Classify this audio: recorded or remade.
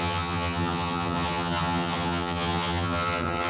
remade